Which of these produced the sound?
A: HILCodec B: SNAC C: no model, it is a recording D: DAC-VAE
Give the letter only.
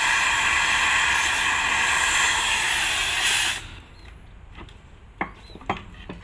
C